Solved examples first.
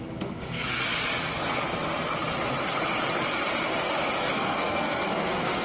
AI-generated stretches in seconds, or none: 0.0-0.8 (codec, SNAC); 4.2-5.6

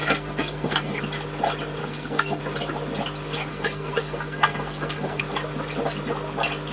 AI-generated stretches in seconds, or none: 0.0-1.0 (codec, SNAC); 1.8-2.4; 3.5-5.2